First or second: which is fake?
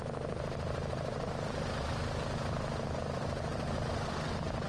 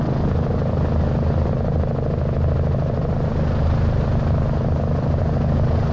first